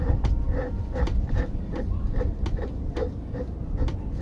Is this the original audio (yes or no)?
yes